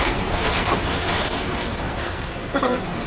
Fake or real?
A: fake